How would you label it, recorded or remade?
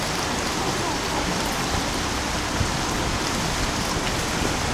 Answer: recorded